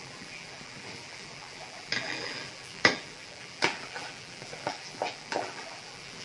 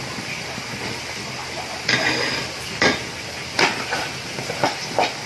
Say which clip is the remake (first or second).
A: first